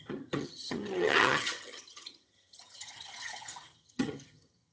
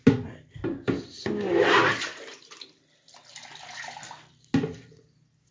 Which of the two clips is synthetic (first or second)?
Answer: first